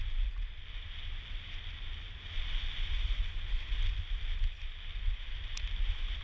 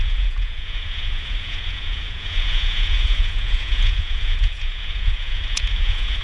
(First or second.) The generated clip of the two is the second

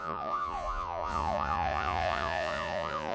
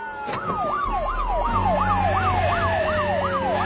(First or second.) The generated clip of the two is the first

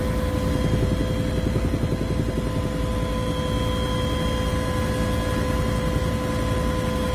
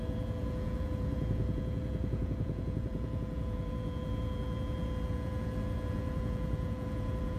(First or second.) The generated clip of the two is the second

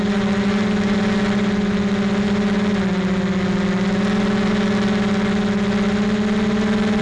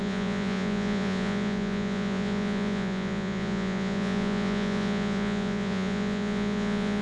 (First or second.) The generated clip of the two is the second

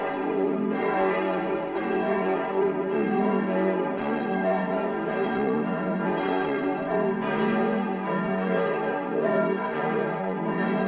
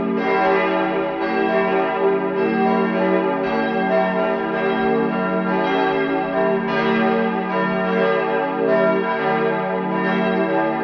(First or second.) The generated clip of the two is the first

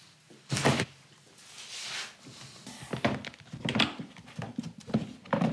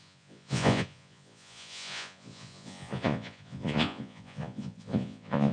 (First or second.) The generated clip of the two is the second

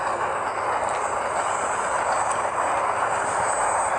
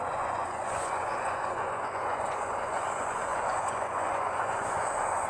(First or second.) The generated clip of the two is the second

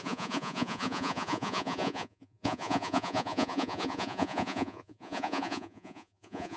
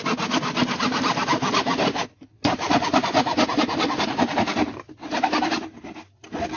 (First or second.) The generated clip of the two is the first